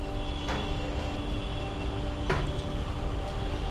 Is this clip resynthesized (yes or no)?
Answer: no